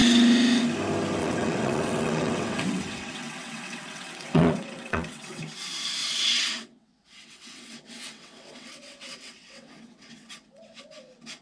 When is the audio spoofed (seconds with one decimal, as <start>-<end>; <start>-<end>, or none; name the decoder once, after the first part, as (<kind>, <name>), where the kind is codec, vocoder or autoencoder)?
1.2-5.4 (vocoder, WaveNeXt); 6.0-10.8